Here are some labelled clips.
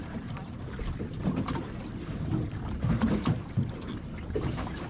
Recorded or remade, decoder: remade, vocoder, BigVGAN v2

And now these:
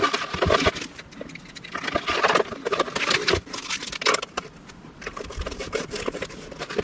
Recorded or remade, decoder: recorded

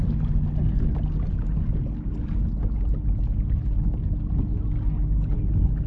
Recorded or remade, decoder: recorded